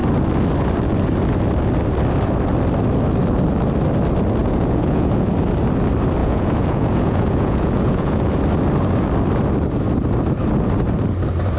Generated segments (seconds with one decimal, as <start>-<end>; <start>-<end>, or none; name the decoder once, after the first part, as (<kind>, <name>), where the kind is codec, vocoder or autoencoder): 4.4-5.3 (vocoder, Vocos); 6.2-8.4